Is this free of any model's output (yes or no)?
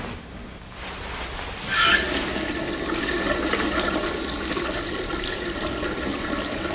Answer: yes